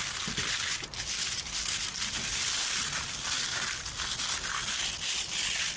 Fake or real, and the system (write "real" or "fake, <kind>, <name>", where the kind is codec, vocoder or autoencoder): real